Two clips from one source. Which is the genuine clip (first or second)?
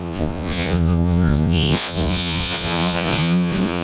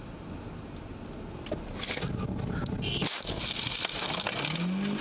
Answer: second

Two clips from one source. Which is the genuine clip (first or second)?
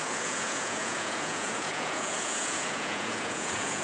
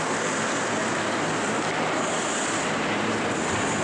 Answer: second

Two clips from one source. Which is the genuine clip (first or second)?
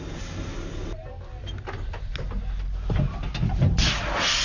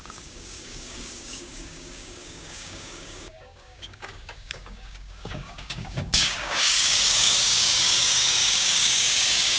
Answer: first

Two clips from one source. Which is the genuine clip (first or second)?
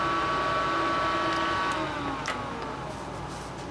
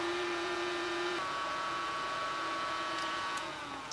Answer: first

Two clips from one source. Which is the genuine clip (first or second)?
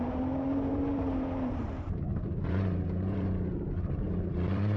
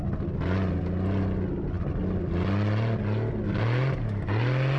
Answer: second